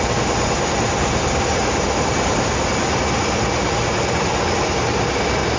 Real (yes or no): yes